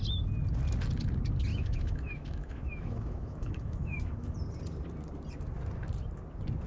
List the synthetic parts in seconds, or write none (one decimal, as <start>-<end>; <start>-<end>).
1.5-4.3